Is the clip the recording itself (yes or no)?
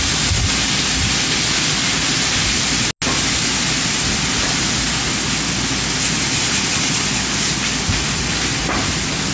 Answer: yes